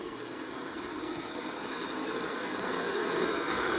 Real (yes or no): no